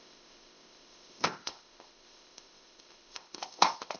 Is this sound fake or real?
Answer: fake